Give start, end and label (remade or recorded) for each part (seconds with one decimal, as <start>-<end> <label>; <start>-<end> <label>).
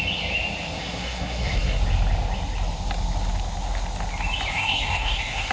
0.0-0.8 recorded; 0.8-1.8 remade; 1.8-4.5 recorded; 4.5-5.5 remade